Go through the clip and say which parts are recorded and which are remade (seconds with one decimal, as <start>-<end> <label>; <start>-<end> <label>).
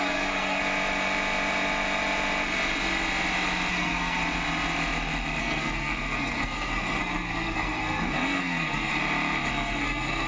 0.0-0.6 remade; 0.6-3.7 recorded; 3.7-4.2 remade; 4.2-5.4 recorded; 5.4-8.9 remade; 8.9-9.5 recorded; 9.5-10.3 remade